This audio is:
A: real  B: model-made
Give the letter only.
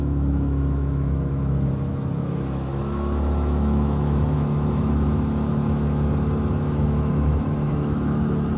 B